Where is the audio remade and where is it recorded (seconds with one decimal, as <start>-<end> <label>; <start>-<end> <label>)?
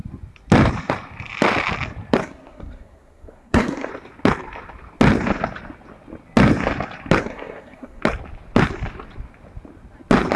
0.0-2.2 recorded; 2.2-3.9 remade; 3.9-7.2 recorded; 7.2-8.0 remade; 8.0-10.4 recorded